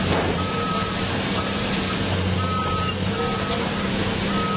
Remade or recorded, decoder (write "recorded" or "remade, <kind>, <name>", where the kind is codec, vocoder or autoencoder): remade, vocoder, BigVGAN v2